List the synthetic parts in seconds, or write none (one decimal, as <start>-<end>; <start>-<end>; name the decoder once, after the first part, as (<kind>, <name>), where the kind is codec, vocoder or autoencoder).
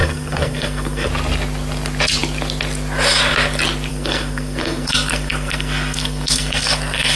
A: 0.0-1.1 (codec, SNAC); 3.9-7.2